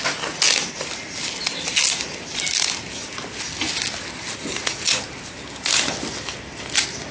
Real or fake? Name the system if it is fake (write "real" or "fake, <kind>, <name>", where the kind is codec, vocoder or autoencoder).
real